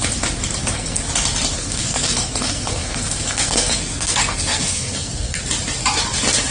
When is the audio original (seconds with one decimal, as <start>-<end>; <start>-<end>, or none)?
0.0-0.6; 1.1-1.5; 5.4-6.5